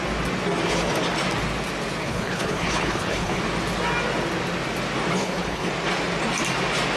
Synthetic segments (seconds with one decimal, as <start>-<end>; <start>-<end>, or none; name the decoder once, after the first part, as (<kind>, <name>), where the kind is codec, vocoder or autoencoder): 2.0-3.4 (codec, HILCodec); 5.2-5.7